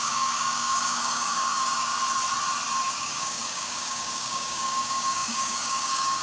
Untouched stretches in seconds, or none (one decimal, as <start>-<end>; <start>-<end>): 1.9-2.9